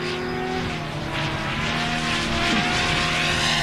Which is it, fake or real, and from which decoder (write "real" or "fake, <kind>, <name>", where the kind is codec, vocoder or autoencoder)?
real